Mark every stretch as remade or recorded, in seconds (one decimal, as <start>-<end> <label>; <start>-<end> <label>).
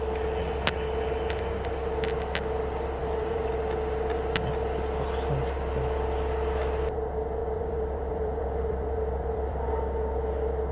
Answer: 0.0-3.0 recorded; 3.0-3.5 remade; 3.5-7.4 recorded; 7.4-9.7 remade; 9.7-10.7 recorded